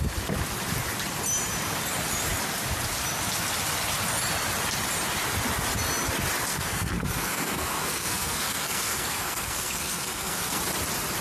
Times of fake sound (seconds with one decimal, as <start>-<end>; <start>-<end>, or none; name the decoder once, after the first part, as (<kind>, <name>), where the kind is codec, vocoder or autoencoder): 6.5-10.6 (codec, SNAC)